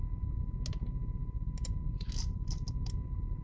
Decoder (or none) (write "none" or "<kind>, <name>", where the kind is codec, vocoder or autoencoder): none